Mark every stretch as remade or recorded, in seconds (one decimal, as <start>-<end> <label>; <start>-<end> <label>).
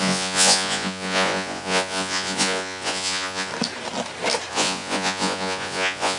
0.0-3.5 remade; 3.5-4.5 recorded; 4.5-6.2 remade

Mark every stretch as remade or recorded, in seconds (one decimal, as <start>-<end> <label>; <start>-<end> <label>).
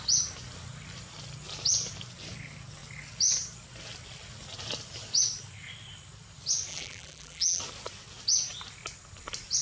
0.0-6.7 recorded; 6.7-7.6 remade; 7.6-9.6 recorded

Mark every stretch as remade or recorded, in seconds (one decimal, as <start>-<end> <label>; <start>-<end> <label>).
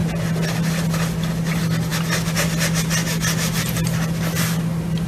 0.0-5.1 recorded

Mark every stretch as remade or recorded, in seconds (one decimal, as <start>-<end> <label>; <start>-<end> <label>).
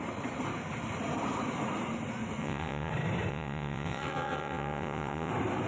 0.0-2.4 recorded; 2.4-2.9 remade; 2.9-3.3 recorded; 3.3-5.3 remade; 5.3-5.7 recorded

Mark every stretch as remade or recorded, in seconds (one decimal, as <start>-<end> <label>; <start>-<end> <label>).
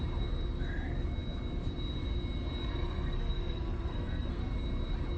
0.0-2.7 recorded; 2.7-4.4 remade; 4.4-5.2 recorded